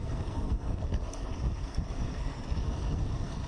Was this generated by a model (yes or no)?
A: yes